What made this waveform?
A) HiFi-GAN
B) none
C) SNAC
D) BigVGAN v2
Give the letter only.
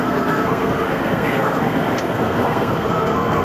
C